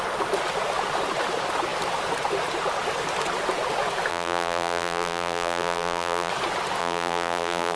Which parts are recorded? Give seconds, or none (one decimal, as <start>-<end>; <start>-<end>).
0.0-4.1; 6.3-6.8